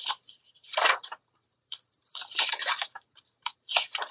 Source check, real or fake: fake